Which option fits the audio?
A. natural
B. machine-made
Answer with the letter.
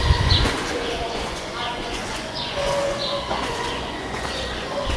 B